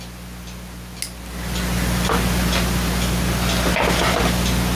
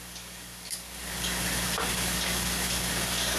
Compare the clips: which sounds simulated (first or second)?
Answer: second